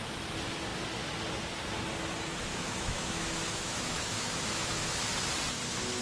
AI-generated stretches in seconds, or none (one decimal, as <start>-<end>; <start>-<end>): 2.5-5.0